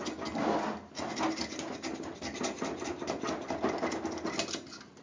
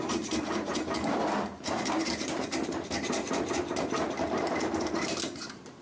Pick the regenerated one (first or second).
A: second